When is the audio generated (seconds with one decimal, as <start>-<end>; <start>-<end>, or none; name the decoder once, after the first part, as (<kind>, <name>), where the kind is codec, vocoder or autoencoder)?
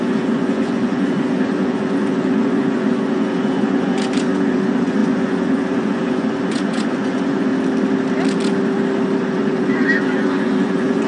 0.0-7.5 (vocoder, Vocos); 9.3-11.1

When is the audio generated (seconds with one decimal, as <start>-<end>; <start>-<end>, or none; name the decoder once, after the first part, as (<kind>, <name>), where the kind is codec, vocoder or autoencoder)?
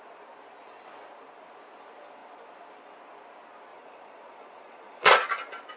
3.7-5.3 (vocoder, Vocos)